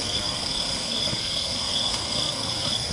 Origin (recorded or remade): remade